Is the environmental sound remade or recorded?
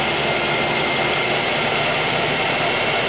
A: recorded